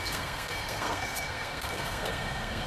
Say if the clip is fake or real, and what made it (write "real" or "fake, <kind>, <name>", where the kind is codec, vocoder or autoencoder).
fake, codec, SNAC